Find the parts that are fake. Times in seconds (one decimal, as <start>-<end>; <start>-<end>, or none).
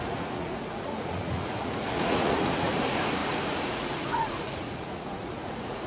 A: 0.0-5.9